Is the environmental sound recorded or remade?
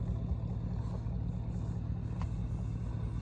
recorded